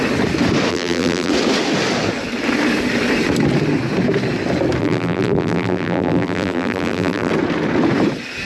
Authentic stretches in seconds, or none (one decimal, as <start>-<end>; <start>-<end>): 0.0-0.7; 1.3-4.8; 7.3-8.4